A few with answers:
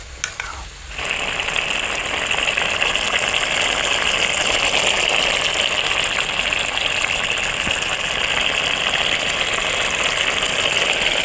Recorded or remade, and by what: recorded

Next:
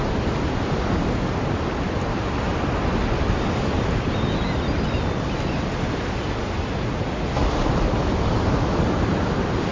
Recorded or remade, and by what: recorded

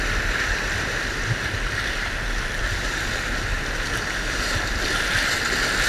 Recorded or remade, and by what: recorded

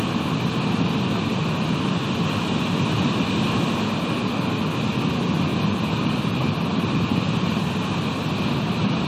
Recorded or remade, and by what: recorded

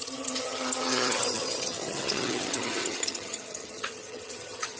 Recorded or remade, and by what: remade, vocoder, HiFi-GAN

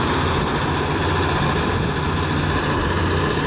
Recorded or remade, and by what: recorded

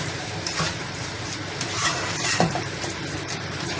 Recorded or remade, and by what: remade, vocoder, BigVGAN v2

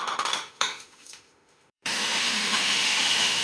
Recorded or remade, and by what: remade, autoencoder, DAC-VAE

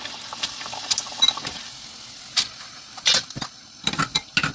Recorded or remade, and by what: recorded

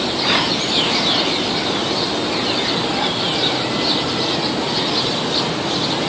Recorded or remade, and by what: recorded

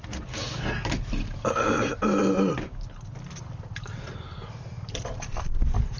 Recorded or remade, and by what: recorded